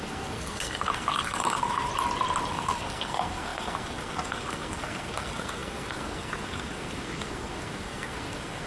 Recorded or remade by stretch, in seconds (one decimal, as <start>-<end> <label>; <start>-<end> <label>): 0.0-1.9 remade; 1.9-2.5 recorded; 2.5-8.7 remade